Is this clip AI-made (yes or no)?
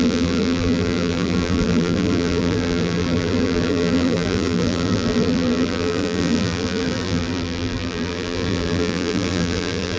yes